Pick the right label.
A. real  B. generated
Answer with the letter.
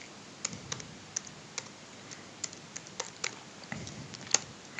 A